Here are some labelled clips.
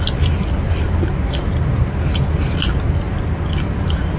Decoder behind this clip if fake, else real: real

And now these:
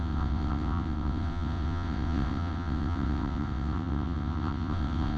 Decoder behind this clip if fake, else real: fake, vocoder, WaveNeXt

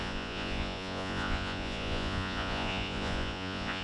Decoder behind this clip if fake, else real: fake, vocoder, Vocos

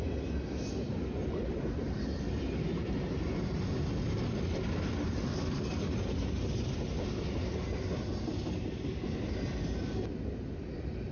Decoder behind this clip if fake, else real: real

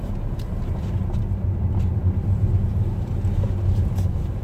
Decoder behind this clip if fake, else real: real